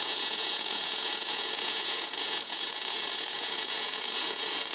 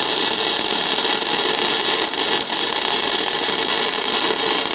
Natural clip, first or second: second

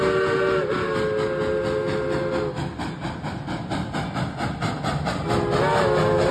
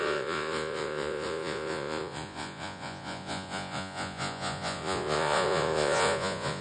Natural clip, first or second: first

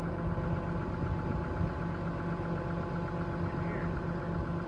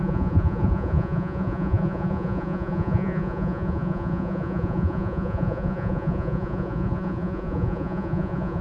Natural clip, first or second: first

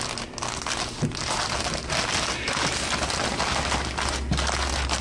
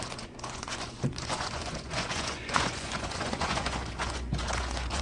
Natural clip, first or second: first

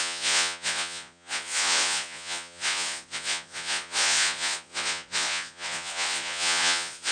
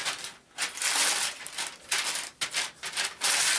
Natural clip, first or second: second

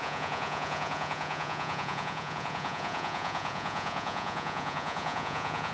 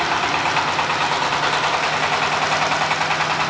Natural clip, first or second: second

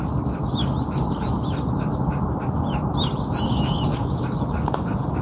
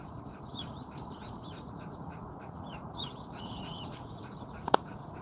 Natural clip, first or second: first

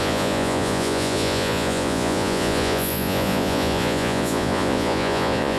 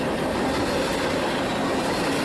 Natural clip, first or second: second